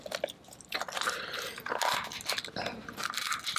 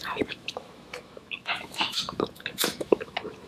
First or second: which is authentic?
first